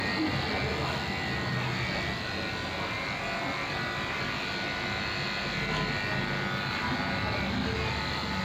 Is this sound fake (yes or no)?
no